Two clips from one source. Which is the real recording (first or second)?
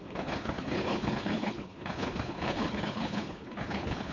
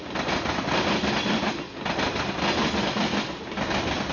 second